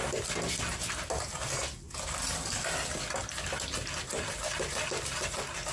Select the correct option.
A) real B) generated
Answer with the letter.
A